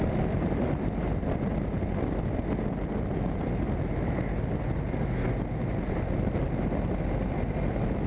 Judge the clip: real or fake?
real